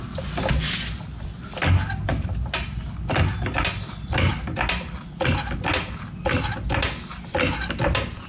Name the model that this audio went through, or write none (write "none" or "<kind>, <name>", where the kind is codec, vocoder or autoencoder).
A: none